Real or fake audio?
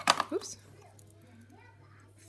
real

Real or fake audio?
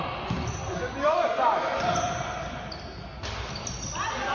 real